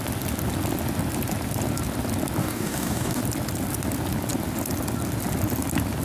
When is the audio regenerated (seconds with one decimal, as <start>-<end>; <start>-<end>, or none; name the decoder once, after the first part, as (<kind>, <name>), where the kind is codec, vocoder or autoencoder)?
2.4-3.2 (codec, DAC)